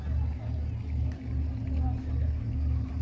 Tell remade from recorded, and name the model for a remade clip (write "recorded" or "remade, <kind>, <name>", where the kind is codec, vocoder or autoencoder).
recorded